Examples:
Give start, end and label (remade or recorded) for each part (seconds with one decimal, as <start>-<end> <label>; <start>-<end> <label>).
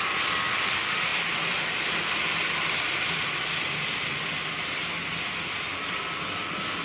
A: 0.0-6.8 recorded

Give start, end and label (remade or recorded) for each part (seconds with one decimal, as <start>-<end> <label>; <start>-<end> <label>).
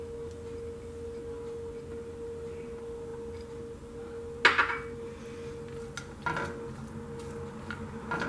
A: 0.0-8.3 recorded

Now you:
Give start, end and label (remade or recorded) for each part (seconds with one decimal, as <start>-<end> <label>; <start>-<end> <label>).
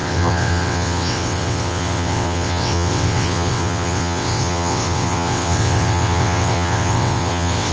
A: 0.0-7.7 remade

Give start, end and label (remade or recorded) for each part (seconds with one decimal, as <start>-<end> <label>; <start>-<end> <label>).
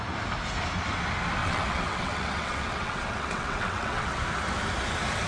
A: 0.0-1.4 recorded; 1.4-4.2 remade; 4.2-5.3 recorded